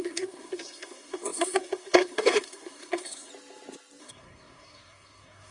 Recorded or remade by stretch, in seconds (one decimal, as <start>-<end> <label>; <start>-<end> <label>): 0.0-3.3 remade; 3.3-4.0 recorded; 4.0-5.5 remade